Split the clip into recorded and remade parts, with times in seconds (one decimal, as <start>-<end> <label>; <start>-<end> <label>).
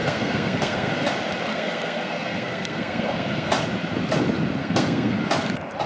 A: 0.0-0.9 remade; 0.9-1.5 recorded; 1.5-3.5 remade; 3.5-4.6 recorded; 4.6-5.2 remade; 5.2-5.9 recorded